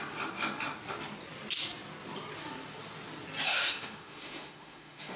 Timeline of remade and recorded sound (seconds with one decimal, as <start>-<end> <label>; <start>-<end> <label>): 0.0-3.5 recorded; 3.5-5.2 remade